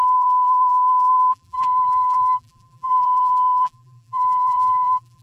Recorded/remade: remade